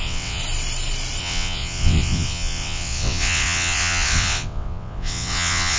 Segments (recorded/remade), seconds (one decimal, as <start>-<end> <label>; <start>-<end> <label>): 0.0-0.4 remade; 0.4-1.2 recorded; 1.2-5.8 remade

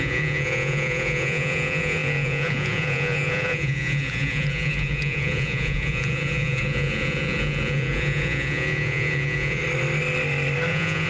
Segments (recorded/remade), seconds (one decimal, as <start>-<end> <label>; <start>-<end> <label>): 0.0-9.6 remade; 9.6-10.7 recorded; 10.7-11.1 remade